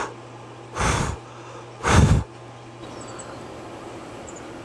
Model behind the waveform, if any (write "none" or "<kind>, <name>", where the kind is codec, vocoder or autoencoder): none